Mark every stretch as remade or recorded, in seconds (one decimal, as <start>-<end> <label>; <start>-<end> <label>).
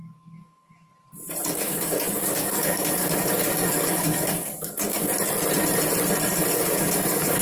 0.0-0.9 remade; 0.9-1.5 recorded; 1.5-5.1 remade; 5.1-6.5 recorded; 6.5-7.4 remade